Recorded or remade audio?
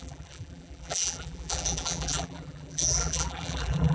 remade